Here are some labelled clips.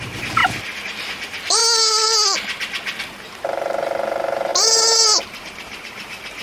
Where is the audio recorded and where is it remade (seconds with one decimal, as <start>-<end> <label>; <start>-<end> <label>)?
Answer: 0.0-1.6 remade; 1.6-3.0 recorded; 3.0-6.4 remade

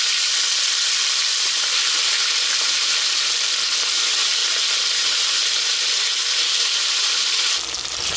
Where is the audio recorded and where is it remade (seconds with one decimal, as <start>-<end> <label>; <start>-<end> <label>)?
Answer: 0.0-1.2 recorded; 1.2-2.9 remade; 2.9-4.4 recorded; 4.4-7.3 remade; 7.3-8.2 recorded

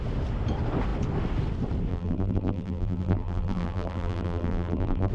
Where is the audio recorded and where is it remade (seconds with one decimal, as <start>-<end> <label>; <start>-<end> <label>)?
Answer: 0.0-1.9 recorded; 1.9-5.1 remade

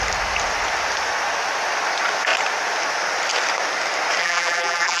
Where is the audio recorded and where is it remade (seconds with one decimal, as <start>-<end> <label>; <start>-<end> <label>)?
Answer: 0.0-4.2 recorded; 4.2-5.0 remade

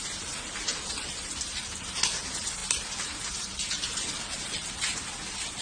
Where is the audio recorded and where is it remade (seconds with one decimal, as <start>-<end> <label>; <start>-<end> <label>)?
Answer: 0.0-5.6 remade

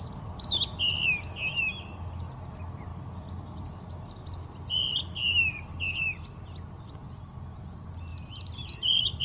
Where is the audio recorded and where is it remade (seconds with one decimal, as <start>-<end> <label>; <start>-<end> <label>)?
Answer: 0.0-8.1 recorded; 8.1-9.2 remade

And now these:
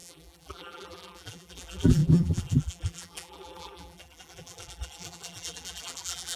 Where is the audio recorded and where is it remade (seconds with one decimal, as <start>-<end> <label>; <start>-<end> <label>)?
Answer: 0.0-6.4 remade

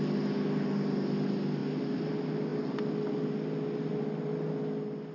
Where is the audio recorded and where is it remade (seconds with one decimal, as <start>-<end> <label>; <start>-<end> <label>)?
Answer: 0.0-1.6 recorded; 1.6-2.1 remade; 2.1-5.1 recorded